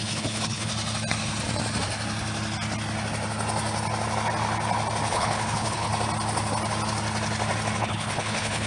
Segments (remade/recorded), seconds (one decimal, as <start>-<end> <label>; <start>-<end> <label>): 0.0-0.7 remade; 0.7-5.1 recorded; 5.1-5.9 remade; 5.9-7.8 recorded; 7.8-8.7 remade